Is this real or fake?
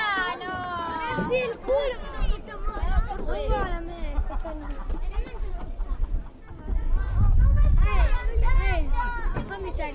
real